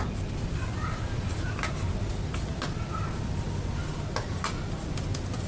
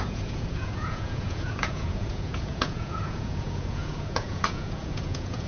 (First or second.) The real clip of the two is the first